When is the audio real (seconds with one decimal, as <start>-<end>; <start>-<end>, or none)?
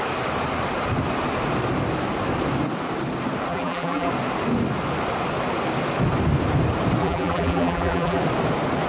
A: 0.0-3.5; 4.1-7.0; 8.2-8.9